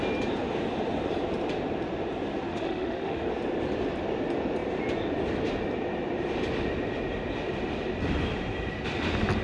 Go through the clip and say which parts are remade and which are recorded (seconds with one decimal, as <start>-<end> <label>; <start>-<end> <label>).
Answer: 0.0-2.5 recorded; 2.5-3.3 remade; 3.3-9.4 recorded